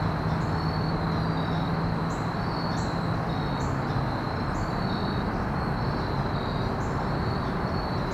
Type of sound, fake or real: real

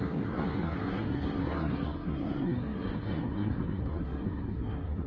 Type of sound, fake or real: fake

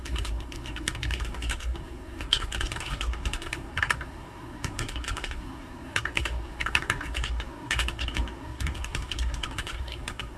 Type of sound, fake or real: fake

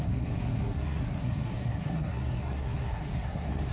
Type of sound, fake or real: fake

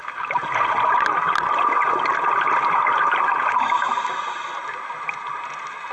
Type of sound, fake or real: real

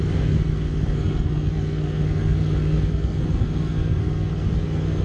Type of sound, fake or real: fake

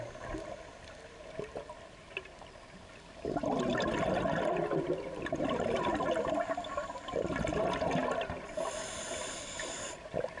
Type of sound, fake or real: real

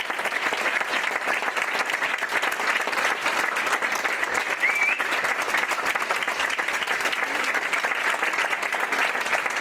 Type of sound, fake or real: real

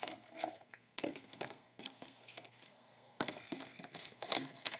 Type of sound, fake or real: fake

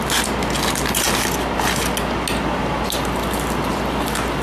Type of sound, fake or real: real